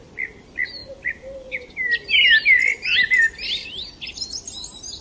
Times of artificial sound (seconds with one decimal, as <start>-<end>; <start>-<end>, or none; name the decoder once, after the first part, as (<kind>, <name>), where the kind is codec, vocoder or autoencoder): none